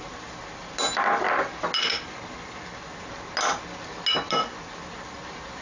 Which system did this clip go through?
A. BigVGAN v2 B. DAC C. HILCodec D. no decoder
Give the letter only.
D